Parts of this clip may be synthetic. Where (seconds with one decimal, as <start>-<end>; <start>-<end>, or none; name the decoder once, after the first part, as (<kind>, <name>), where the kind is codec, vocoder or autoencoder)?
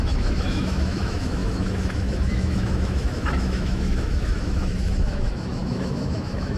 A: 0.0-6.6 (autoencoder, DAC-VAE)